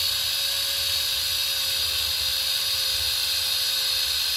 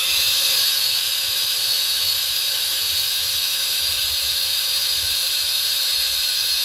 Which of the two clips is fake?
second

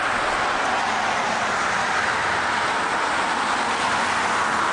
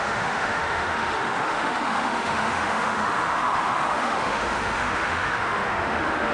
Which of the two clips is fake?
second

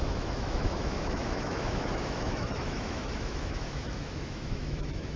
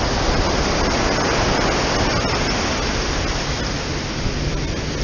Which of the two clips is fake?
first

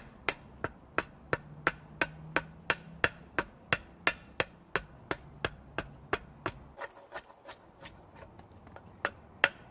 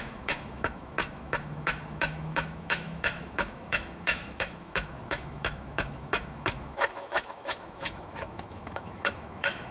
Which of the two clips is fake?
second